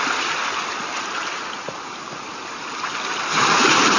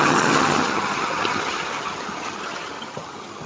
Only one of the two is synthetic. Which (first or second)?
second